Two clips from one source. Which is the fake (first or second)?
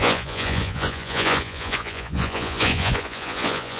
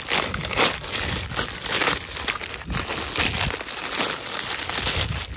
first